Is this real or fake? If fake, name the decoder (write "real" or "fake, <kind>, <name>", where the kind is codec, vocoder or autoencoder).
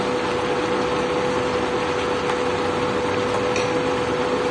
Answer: real